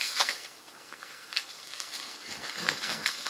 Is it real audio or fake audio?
fake